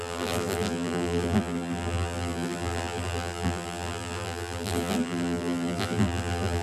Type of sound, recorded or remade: remade